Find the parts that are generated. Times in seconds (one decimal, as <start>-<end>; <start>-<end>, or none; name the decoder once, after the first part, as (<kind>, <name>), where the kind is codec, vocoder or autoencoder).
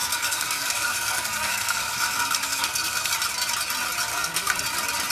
0.0-3.1 (codec, SNAC); 4.1-4.6